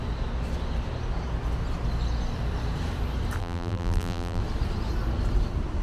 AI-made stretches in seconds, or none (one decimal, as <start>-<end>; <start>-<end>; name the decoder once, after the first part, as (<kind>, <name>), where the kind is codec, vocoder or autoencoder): 3.4-4.4 (vocoder, BigVGAN v2)